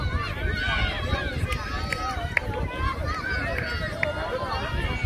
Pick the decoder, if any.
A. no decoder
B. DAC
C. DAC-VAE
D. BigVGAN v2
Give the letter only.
A